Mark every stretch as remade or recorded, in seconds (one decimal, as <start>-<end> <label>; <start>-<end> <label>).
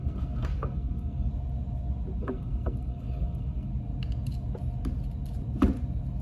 0.0-1.3 remade; 1.3-2.2 recorded; 2.2-3.7 remade; 3.7-6.2 recorded